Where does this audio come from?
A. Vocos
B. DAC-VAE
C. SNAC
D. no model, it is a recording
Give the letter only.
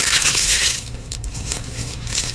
C